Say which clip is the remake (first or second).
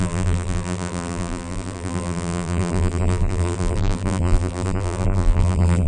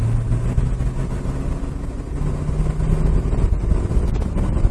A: first